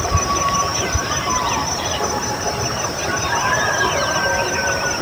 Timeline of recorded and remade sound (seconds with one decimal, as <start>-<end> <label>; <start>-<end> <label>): 0.0-5.0 remade